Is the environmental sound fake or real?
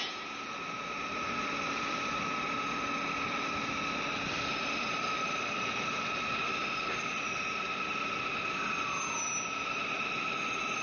real